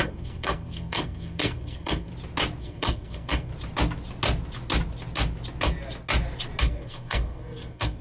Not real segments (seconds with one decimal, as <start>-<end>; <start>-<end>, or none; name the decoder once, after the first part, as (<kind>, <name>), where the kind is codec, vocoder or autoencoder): 0.0-2.1 (codec, SNAC); 2.6-3.5; 6.6-8.0